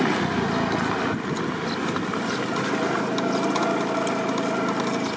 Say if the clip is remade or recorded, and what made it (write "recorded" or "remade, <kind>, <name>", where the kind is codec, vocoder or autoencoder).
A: recorded